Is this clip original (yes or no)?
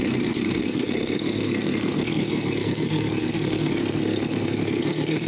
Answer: no